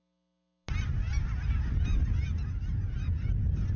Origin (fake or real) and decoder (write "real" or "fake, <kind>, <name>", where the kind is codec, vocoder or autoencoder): real